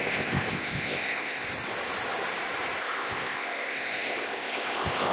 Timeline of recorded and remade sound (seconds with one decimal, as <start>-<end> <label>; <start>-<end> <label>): 0.0-1.5 remade; 1.5-2.8 recorded; 2.8-5.1 remade